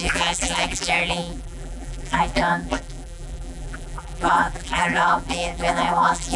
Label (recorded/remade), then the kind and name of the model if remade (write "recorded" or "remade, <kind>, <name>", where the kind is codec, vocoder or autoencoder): remade, vocoder, BigVGAN v2